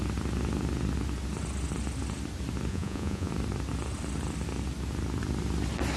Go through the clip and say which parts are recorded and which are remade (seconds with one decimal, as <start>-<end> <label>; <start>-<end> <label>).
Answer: 0.0-2.7 recorded; 2.7-3.3 remade; 3.3-6.0 recorded